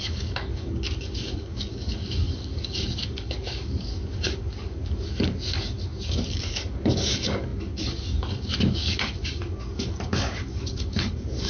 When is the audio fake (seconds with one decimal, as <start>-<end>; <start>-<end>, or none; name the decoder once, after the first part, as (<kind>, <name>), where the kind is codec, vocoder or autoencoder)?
0.0-11.5 (codec, DAC)